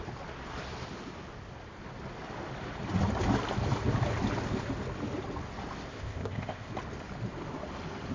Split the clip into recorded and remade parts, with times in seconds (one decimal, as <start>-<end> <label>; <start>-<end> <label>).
0.0-5.9 recorded; 5.9-6.7 remade; 6.7-8.1 recorded